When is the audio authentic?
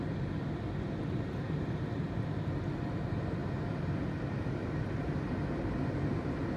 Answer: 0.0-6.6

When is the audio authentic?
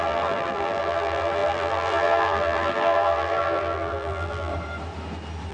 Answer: 4.5-5.5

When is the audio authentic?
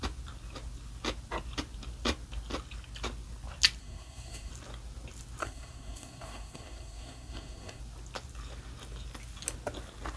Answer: 0.0-3.8; 4.5-5.4; 7.8-10.2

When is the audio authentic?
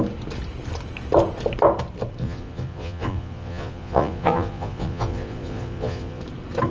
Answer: 0.0-2.2; 6.2-6.7